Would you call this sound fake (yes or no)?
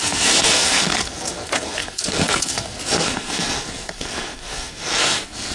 yes